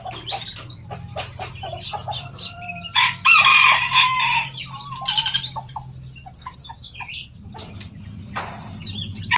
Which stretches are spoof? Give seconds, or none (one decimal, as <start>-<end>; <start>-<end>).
2.0-2.9; 3.5-5.7